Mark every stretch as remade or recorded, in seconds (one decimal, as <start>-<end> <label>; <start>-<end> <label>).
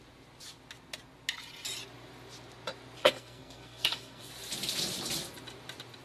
0.0-3.0 recorded; 3.0-4.3 remade; 4.3-6.0 recorded